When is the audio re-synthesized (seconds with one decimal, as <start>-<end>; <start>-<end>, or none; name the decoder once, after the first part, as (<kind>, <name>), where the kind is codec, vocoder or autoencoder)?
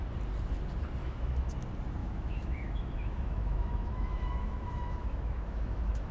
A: 1.0-1.5 (autoencoder, DAC-VAE); 2.0-6.1